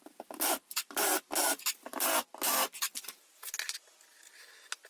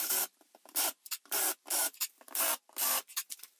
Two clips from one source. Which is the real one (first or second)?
first